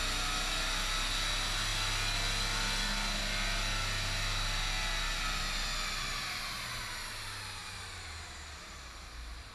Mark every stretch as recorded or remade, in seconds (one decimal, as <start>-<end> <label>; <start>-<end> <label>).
0.0-7.6 recorded; 7.6-9.5 remade